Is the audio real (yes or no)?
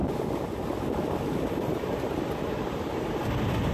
yes